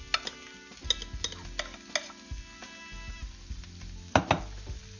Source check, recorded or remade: recorded